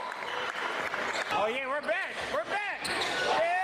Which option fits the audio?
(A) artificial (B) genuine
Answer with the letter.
B